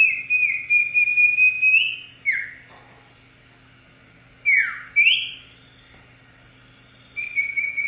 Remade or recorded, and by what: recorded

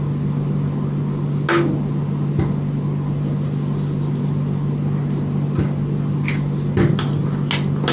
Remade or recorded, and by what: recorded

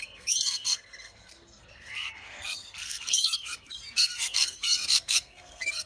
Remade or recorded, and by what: remade, codec, SNAC